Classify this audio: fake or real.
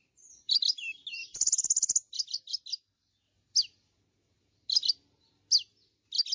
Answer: real